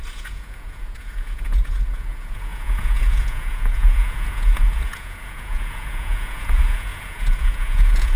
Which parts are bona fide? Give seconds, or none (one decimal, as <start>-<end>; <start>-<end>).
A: none